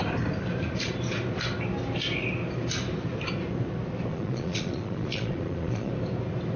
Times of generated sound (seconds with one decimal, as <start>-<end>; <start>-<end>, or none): 4.1-5.9